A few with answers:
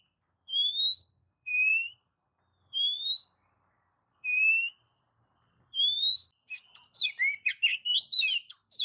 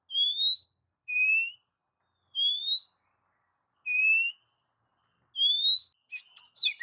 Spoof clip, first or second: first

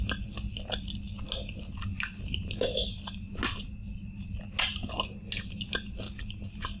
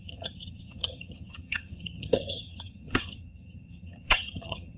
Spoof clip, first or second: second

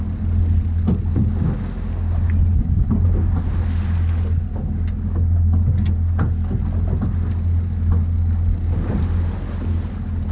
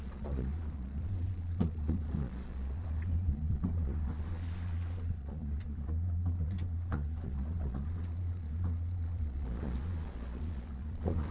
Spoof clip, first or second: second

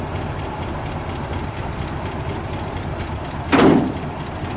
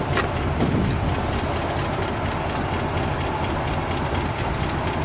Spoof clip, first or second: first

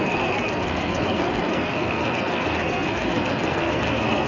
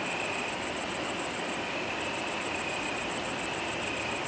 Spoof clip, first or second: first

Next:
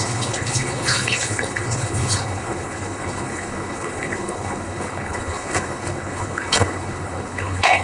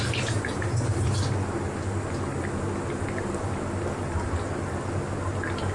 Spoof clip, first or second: first